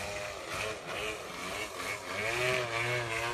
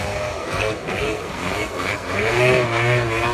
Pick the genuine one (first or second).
first